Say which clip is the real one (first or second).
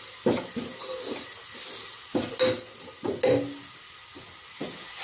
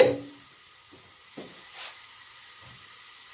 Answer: first